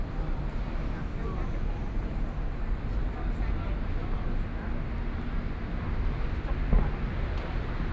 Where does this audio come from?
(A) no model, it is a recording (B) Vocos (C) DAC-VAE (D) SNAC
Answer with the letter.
A